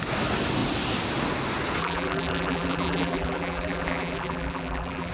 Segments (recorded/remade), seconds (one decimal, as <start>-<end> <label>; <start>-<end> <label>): 0.0-1.8 recorded; 1.8-5.1 remade